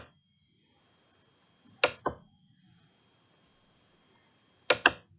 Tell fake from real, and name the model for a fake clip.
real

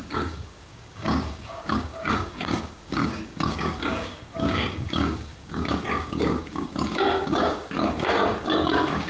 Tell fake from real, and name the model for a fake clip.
fake, codec, DAC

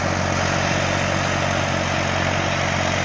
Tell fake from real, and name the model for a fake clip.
real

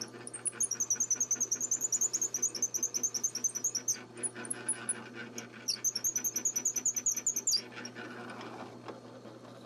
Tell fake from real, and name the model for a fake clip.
real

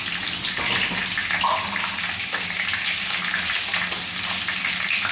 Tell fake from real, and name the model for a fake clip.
real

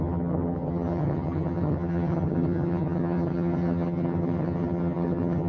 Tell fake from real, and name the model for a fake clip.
fake, vocoder, HiFi-GAN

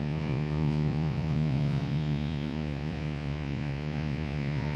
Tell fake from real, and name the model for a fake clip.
fake, vocoder, Vocos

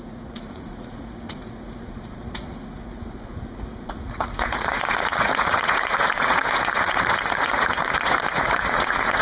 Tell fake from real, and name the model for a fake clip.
fake, vocoder, Vocos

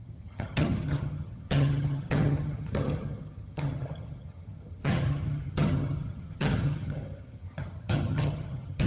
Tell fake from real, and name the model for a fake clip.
fake, vocoder, HiFi-GAN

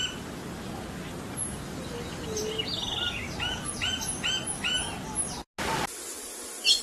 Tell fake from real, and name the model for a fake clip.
real